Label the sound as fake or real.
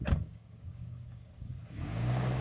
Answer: fake